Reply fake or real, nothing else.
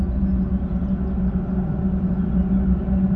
real